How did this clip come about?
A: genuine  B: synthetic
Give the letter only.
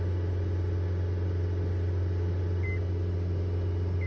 A